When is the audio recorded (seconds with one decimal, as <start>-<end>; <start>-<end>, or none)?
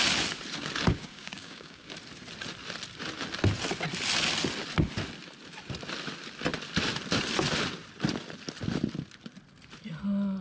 0.0-0.9; 1.9-10.4